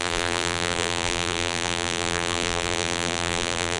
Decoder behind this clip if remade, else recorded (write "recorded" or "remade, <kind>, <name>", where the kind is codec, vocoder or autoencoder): remade, vocoder, BigVGAN v2